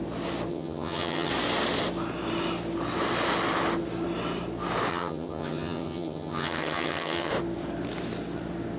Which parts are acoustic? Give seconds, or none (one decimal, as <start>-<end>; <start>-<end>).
0.0-0.5; 1.3-4.9; 7.3-8.8